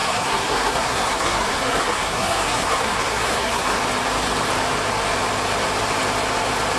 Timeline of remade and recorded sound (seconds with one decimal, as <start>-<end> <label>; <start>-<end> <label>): 0.0-3.8 remade; 3.8-6.8 recorded

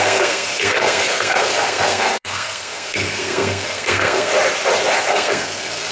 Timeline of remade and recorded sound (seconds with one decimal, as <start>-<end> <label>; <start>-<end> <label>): 0.0-4.3 remade; 4.3-5.1 recorded; 5.1-5.9 remade

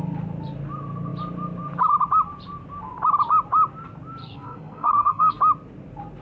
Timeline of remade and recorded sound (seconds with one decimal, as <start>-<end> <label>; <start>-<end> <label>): 0.0-4.2 recorded; 4.2-5.4 remade; 5.4-6.2 recorded

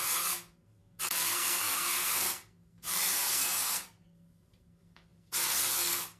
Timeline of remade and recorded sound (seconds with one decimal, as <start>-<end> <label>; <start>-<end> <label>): 0.0-6.2 remade

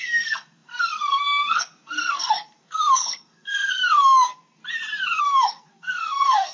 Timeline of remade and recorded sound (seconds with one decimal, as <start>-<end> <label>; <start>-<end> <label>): 0.0-4.6 remade; 4.6-5.2 recorded; 5.2-6.5 remade

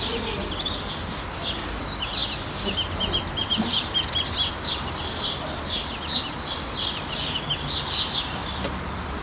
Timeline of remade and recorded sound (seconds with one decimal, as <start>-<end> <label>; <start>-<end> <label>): 0.0-9.2 recorded

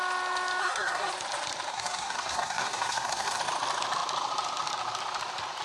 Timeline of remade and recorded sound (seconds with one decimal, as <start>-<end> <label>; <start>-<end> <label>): 0.0-0.6 recorded; 0.6-1.1 remade; 1.1-1.7 recorded; 1.7-3.4 remade; 3.4-5.6 recorded